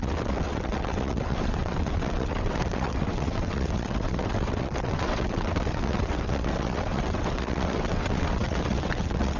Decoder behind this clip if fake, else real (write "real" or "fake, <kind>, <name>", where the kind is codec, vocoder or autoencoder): fake, vocoder, WaveNeXt